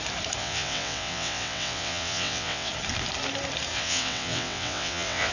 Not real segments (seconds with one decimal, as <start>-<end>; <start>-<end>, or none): 0.4-2.7; 3.7-5.3